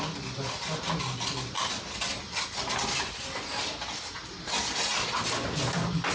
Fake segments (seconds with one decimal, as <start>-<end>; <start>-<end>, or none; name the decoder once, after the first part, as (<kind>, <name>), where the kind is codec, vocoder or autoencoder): none